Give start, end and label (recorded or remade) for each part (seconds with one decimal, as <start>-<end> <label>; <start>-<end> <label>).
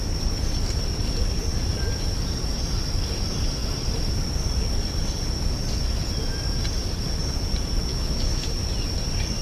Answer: 0.0-7.9 recorded; 7.9-8.5 remade; 8.5-9.4 recorded